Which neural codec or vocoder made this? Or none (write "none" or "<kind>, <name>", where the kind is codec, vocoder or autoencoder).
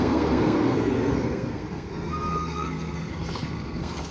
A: codec, SNAC